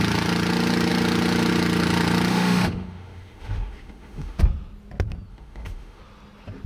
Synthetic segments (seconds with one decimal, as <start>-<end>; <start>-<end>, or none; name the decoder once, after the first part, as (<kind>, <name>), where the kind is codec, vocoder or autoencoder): 2.3-4.4 (autoencoder, DAC-VAE); 5.3-6.0

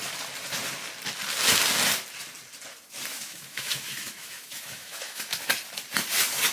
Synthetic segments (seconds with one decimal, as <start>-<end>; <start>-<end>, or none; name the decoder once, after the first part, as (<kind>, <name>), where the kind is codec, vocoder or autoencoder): 3.1-5.5 (autoencoder, DAC-VAE)